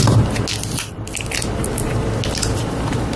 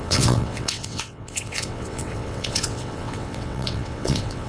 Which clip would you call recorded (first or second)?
first